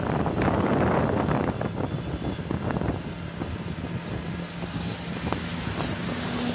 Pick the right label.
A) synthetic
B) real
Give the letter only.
B